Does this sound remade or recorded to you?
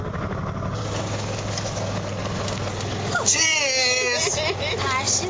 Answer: recorded